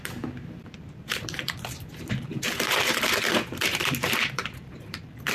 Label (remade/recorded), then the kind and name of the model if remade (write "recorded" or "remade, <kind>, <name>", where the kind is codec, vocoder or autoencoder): remade, vocoder, BigVGAN v2